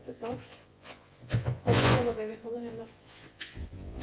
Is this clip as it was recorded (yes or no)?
no